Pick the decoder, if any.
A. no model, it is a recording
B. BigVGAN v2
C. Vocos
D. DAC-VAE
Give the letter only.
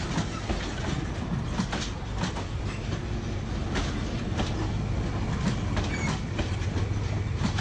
A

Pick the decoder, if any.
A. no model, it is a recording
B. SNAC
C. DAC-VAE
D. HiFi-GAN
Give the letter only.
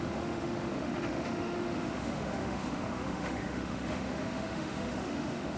C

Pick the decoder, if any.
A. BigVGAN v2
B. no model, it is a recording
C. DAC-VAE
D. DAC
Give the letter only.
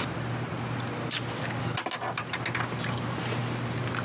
B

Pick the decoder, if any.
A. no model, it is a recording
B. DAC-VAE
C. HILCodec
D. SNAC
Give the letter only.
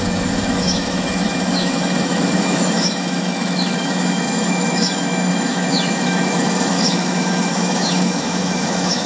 B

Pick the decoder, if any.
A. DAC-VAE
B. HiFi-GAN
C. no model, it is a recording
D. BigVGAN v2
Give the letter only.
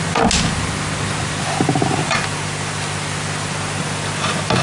C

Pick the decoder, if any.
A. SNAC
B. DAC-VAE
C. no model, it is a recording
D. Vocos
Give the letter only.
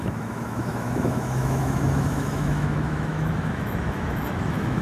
B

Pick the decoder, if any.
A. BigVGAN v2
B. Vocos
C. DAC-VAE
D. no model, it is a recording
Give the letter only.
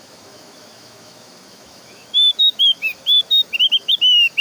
C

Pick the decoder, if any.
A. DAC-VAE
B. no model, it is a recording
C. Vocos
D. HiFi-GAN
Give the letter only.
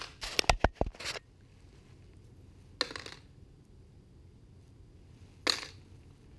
B